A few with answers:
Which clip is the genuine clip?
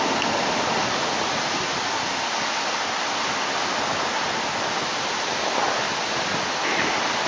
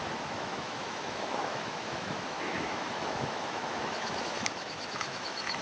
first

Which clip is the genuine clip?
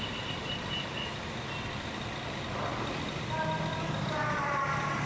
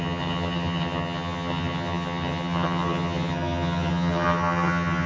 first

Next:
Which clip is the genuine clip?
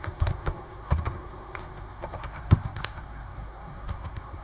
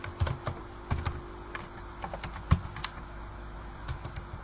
second